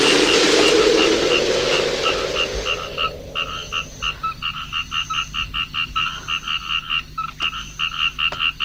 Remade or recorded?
recorded